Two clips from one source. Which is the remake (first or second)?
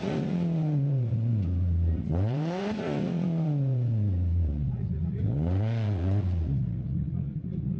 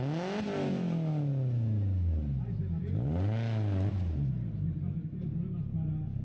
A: first